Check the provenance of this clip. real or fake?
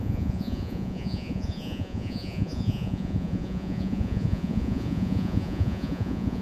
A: fake